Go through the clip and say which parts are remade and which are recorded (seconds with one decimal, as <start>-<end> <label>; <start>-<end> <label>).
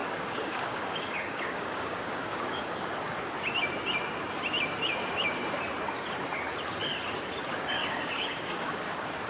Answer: 0.0-2.9 remade; 2.9-7.5 recorded; 7.5-9.3 remade